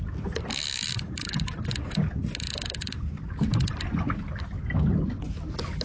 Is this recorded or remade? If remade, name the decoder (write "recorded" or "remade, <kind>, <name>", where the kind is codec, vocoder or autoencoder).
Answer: recorded